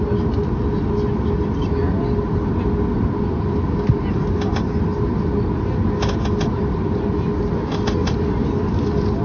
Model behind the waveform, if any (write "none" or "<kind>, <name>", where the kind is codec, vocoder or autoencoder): none